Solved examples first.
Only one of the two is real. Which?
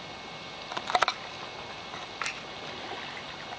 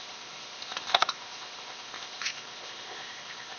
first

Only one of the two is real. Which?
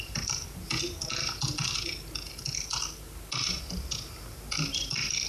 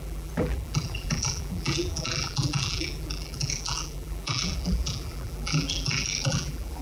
first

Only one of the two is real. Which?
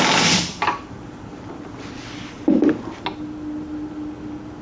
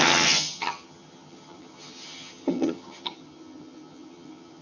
first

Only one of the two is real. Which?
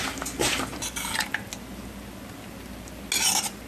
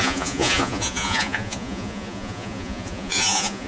first